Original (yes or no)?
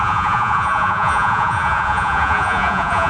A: no